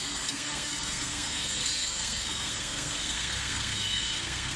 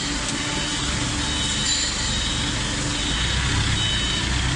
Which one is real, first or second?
second